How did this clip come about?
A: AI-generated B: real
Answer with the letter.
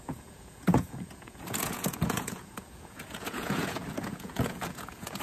A